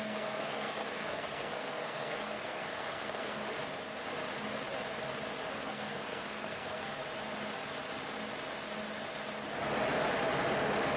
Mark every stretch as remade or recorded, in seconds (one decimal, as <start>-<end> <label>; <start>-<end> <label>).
0.0-3.4 remade; 3.4-5.5 recorded; 5.5-7.0 remade; 7.0-11.0 recorded